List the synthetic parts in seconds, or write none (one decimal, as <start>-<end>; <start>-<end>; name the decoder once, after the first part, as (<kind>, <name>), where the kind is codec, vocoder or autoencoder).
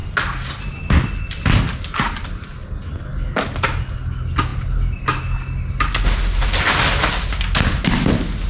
none